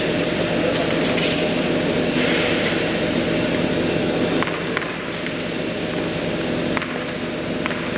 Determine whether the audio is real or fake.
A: real